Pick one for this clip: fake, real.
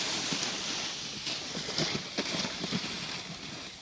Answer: real